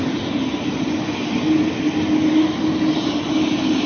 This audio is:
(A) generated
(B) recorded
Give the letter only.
B